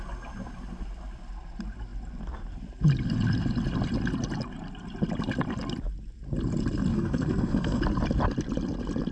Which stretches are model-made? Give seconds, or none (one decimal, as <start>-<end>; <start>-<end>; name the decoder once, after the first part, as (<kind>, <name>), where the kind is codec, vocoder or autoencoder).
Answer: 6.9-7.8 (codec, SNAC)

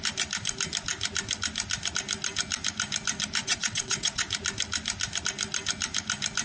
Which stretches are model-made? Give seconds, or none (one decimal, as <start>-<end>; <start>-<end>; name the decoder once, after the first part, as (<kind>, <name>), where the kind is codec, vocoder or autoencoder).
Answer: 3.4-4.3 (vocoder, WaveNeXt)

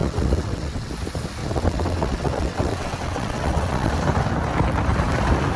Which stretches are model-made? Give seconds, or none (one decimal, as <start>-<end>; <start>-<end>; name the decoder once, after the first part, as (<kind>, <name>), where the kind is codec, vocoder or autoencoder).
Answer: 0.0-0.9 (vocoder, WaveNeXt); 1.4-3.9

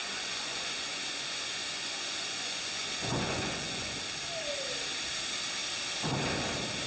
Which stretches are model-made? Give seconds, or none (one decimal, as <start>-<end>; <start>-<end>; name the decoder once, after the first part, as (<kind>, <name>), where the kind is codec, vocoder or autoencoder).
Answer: 0.0-4.0 (vocoder, Vocos)

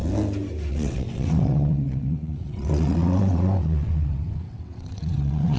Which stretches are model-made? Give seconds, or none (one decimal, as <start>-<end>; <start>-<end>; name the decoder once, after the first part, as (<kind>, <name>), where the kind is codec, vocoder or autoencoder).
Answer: 0.7-5.6 (vocoder, WaveNeXt)

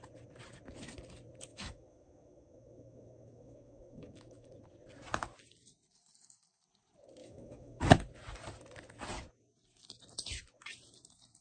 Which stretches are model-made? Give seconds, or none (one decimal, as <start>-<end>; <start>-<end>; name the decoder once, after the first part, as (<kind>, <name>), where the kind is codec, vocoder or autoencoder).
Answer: 1.5-4.5 (autoencoder, DAC-VAE); 7.2-7.8

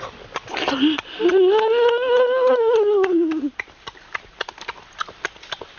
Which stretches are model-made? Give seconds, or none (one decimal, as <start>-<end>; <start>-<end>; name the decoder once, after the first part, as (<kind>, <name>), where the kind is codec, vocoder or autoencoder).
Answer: none